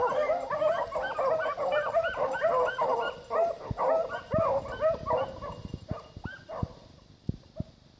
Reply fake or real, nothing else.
real